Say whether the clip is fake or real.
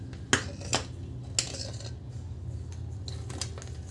real